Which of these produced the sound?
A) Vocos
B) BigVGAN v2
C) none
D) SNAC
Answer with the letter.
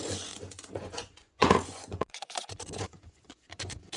A